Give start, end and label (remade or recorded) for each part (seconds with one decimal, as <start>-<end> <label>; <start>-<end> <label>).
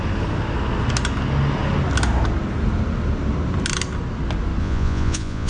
0.0-4.6 recorded; 4.6-5.5 remade